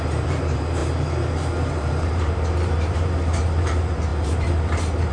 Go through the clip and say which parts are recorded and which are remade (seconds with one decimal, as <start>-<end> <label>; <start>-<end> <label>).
0.0-0.8 remade; 0.8-1.7 recorded; 1.7-5.1 remade